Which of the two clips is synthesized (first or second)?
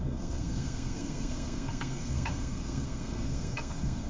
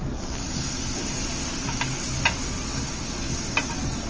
first